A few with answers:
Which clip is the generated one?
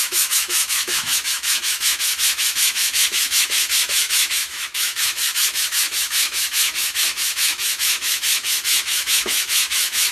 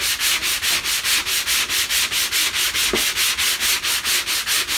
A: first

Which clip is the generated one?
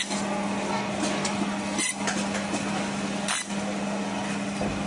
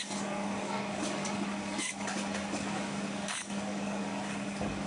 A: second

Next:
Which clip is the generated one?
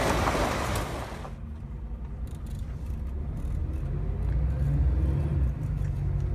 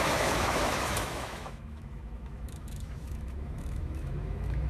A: second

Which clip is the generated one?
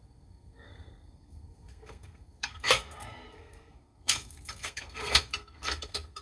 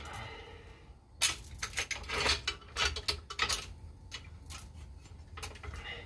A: first